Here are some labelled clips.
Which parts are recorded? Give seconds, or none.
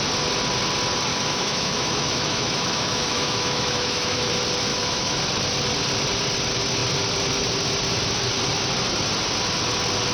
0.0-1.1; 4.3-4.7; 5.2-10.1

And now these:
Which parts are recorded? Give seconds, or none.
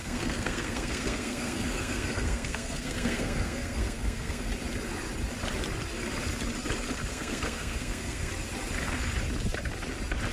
4.5-7.1; 8.3-10.3